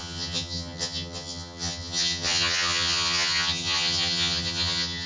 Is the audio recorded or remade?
remade